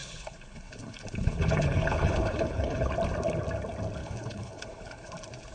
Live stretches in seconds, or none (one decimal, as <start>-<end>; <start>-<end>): 2.9-4.0; 5.1-5.5